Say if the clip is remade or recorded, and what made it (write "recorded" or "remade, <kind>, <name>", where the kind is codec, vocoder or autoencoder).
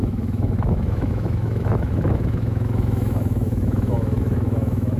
remade, autoencoder, DAC-VAE